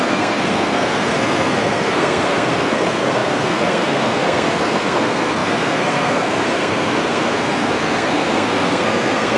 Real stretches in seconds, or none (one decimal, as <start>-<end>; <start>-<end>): none